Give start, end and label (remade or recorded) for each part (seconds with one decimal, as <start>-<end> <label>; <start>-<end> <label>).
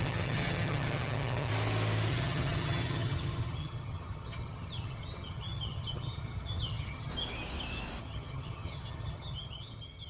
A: 0.0-1.5 remade; 1.5-2.1 recorded; 2.1-7.1 remade; 7.1-8.0 recorded; 8.0-10.1 remade